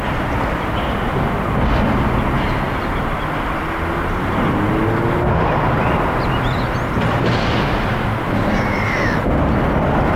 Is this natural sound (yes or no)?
yes